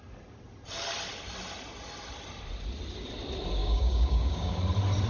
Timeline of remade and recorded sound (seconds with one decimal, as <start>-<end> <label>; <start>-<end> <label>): 0.0-3.6 recorded; 3.6-4.6 remade; 4.6-5.1 recorded